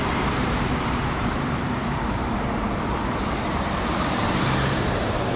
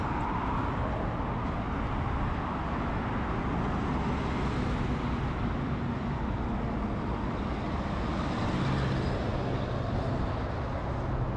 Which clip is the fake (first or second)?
first